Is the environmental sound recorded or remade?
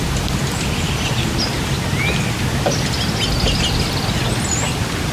recorded